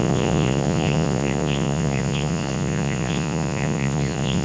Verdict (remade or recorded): remade